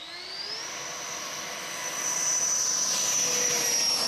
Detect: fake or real real